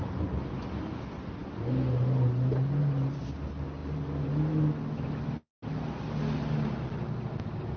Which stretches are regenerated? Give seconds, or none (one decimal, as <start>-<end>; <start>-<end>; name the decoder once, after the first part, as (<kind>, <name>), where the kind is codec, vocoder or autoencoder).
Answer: none